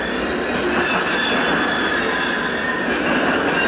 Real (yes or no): yes